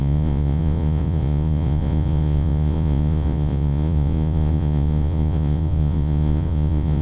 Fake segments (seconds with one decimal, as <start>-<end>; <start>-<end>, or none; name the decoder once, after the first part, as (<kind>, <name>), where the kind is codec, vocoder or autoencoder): 0.0-7.0 (vocoder, Vocos)